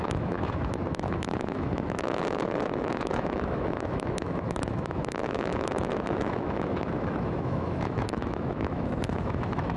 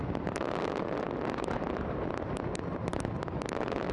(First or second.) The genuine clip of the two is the second